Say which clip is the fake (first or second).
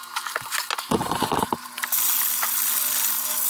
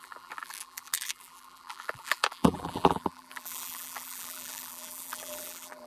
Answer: second